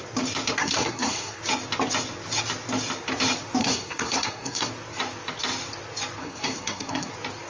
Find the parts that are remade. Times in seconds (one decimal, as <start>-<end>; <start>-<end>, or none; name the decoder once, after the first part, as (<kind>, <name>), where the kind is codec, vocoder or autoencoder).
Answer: 0.6-1.4 (codec, SNAC); 3.6-4.7; 6.2-7.1